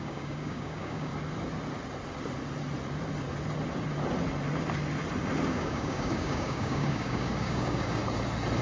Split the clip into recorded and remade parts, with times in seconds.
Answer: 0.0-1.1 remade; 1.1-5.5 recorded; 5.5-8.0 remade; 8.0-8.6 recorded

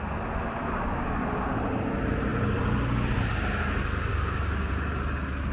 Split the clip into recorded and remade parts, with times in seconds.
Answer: 0.0-0.6 recorded; 0.6-1.5 remade; 1.5-4.1 recorded; 4.1-4.7 remade; 4.7-5.5 recorded

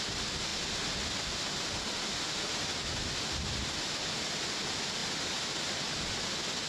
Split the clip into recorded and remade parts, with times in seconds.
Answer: 0.0-6.7 recorded